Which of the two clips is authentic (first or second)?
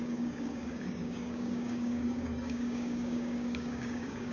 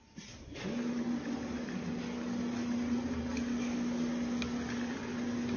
second